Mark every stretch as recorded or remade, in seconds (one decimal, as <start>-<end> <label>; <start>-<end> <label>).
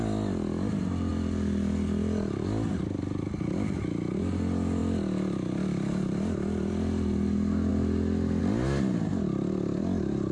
0.0-1.1 recorded; 1.1-3.2 remade; 3.2-10.3 recorded